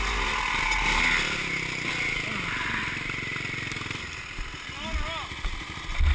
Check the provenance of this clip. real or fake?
real